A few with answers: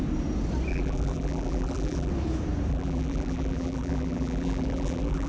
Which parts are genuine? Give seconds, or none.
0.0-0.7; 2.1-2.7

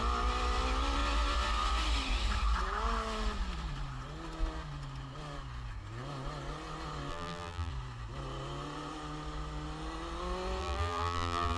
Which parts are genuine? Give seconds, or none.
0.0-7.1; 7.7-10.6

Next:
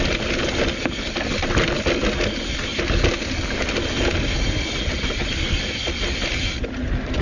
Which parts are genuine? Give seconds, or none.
0.0-7.2